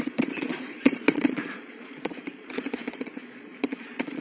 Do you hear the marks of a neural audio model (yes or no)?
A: yes